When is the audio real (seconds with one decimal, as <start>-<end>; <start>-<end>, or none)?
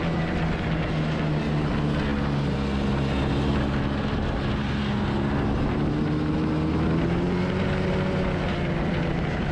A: 0.0-9.5